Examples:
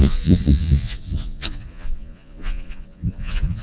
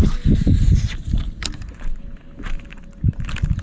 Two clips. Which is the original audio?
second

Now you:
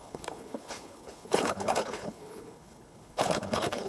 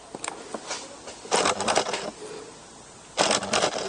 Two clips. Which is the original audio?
second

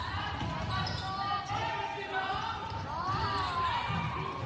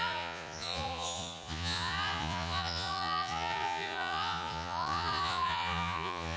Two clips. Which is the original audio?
first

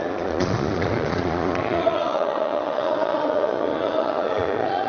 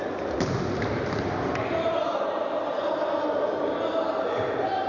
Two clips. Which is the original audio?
second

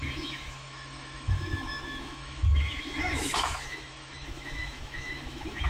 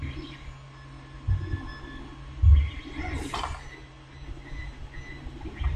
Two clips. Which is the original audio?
second